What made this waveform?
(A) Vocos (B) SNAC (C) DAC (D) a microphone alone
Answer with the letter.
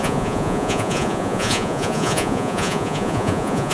A